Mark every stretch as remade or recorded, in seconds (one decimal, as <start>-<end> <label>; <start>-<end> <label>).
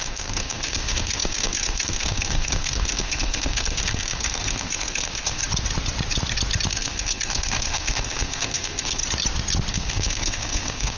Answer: 0.0-5.4 remade; 5.4-6.7 recorded; 6.7-9.0 remade; 9.0-9.7 recorded; 9.7-11.0 remade